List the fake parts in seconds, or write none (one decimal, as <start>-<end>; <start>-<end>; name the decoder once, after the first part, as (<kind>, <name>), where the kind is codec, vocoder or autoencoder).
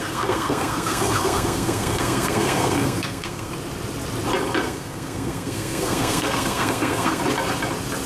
0.0-3.5 (codec, SNAC); 4.6-7.2